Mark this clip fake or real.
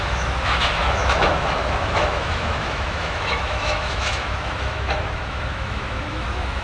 fake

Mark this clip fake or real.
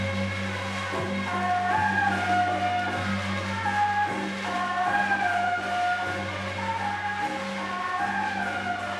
real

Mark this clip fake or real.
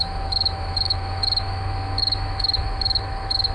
fake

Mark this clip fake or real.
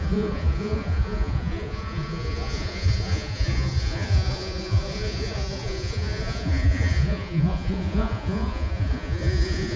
fake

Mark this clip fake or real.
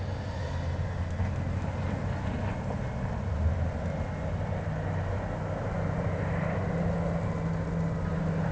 real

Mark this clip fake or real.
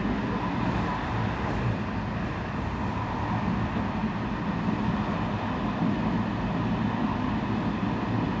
real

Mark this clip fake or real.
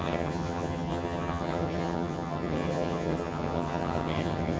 fake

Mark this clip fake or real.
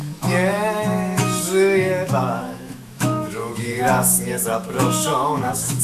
fake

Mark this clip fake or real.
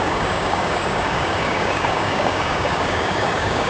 fake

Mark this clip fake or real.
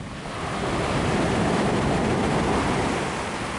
real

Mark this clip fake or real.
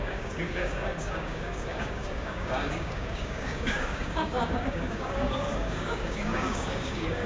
fake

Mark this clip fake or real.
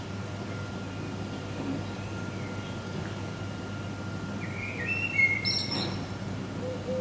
real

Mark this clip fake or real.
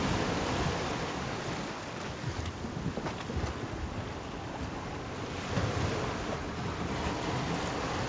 real